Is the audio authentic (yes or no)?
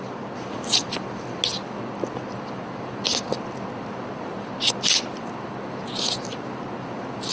yes